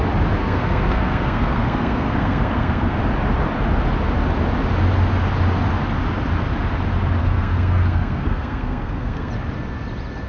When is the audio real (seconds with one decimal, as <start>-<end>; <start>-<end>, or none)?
0.0-0.4; 3.0-7.2; 9.3-10.3